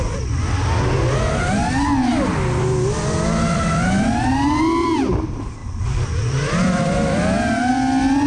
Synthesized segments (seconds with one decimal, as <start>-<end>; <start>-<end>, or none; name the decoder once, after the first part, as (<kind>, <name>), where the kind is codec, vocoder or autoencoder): 5.6-7.7 (vocoder, BigVGAN v2)